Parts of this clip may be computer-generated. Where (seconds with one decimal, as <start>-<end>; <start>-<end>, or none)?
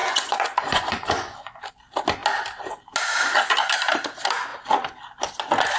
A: 0.0-1.7